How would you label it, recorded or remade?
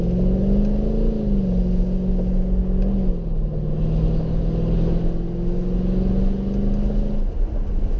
recorded